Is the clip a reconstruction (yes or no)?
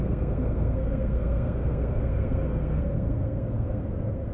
yes